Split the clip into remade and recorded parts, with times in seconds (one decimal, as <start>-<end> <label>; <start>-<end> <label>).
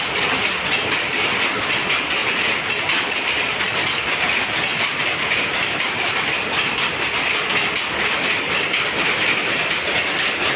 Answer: 0.0-10.6 recorded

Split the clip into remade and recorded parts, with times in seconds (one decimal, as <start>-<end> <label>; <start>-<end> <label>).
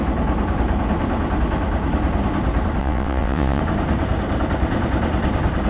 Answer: 0.0-2.8 recorded; 2.8-3.6 remade; 3.6-5.7 recorded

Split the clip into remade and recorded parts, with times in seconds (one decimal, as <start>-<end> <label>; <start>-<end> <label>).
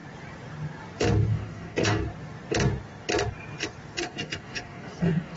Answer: 0.0-1.3 recorded; 1.3-2.0 remade; 2.0-4.0 recorded; 4.0-5.4 remade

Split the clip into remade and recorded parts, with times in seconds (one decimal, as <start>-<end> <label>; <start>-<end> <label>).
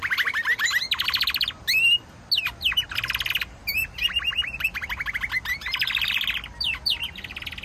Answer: 0.0-7.6 recorded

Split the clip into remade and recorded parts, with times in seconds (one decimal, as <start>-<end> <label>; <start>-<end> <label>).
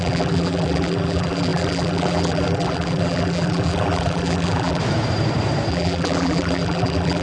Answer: 0.0-4.8 remade; 4.8-5.7 recorded; 5.7-7.2 remade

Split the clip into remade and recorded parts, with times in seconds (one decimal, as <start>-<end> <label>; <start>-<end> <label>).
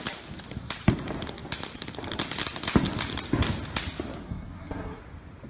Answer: 0.0-4.2 recorded; 4.2-5.0 remade; 5.0-5.5 recorded